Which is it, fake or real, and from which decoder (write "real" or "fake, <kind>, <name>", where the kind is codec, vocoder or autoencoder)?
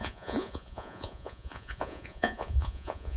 fake, vocoder, Vocos